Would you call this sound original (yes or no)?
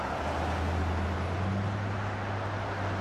yes